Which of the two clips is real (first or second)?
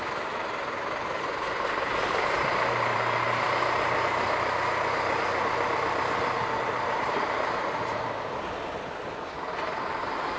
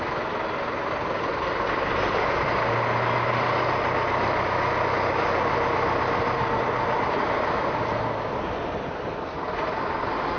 second